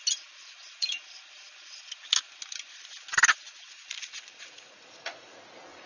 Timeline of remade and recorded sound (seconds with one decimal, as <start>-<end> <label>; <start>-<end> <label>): 0.0-3.4 recorded; 3.4-5.9 remade